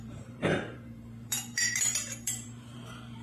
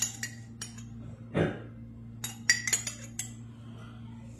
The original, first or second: second